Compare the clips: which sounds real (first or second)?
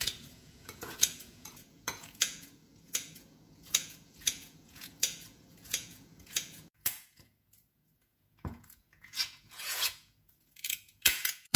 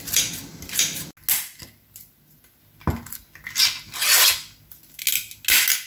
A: second